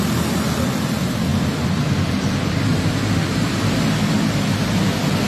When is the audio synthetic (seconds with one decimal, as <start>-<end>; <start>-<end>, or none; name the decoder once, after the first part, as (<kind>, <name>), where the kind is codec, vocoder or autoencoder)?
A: none